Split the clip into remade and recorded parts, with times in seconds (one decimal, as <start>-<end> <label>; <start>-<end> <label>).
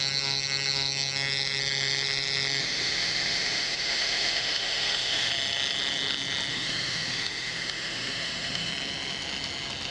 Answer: 0.0-2.6 recorded; 2.6-5.3 remade; 5.3-6.5 recorded; 6.5-8.7 remade; 8.7-9.9 recorded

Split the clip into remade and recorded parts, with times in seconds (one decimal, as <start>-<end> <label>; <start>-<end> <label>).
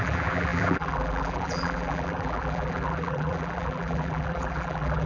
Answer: 0.0-5.1 remade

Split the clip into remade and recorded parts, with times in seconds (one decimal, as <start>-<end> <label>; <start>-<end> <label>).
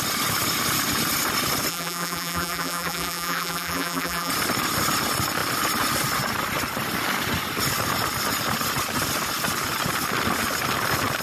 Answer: 0.0-1.7 recorded; 1.7-4.3 remade; 4.3-11.2 recorded